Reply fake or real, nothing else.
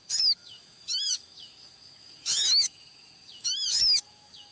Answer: fake